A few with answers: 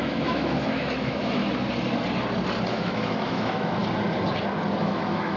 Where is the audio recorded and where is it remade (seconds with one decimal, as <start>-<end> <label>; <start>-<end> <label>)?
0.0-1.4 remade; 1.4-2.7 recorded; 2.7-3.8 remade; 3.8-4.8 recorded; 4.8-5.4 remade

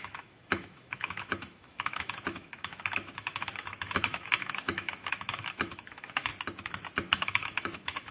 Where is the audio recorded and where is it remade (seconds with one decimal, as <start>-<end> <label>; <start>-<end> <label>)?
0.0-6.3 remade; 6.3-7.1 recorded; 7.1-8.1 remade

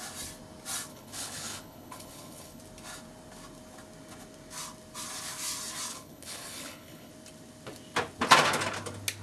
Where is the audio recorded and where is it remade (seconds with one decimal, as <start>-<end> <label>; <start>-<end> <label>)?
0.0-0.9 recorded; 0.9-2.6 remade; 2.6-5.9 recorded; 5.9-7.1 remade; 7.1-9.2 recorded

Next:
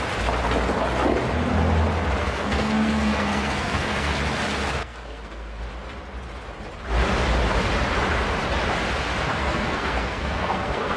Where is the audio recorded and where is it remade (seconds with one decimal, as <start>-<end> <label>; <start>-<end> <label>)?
0.0-2.2 recorded; 2.2-4.2 remade; 4.2-4.8 recorded; 4.8-5.6 remade; 5.6-9.3 recorded; 9.3-11.0 remade